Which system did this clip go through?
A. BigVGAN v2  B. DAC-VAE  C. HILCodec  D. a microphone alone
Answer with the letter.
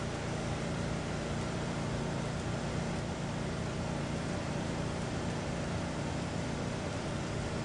A